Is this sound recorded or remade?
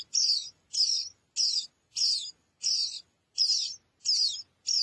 recorded